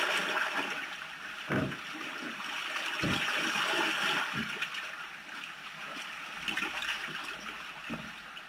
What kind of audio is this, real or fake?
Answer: real